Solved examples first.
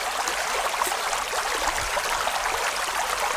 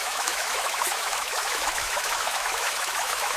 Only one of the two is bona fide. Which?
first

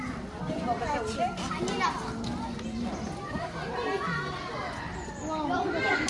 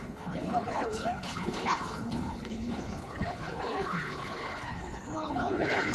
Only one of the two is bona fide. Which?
first